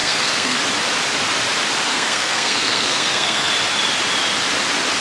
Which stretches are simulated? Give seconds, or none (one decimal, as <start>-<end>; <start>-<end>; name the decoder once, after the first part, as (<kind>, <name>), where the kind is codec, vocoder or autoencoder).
0.0-0.6 (codec, SNAC); 1.9-3.5